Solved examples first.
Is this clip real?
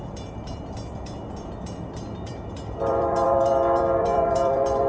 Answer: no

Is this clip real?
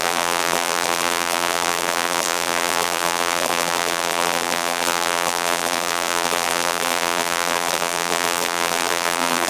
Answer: no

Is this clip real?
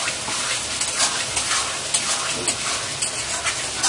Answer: yes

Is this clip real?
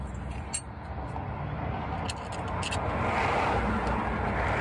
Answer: yes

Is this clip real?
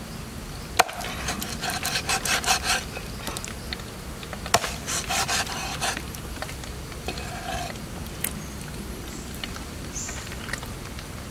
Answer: yes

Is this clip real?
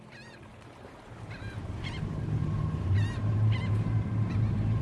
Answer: no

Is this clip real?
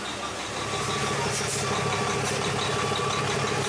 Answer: yes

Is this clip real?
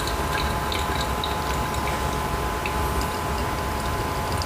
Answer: yes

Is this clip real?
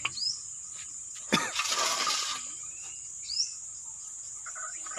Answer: no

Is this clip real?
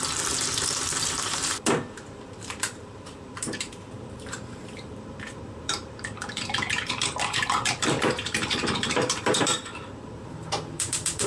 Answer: no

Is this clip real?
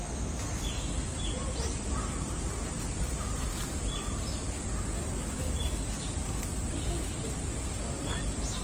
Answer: yes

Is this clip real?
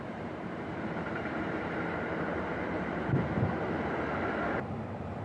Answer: no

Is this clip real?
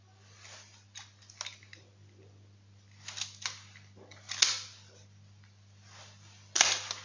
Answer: yes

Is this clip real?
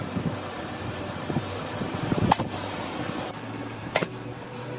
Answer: no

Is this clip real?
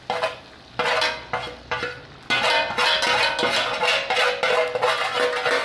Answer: yes